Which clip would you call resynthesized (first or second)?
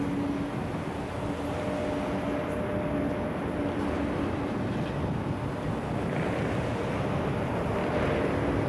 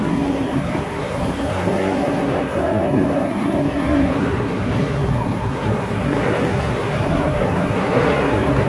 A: second